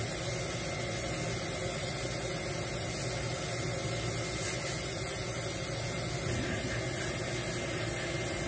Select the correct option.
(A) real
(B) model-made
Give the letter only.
A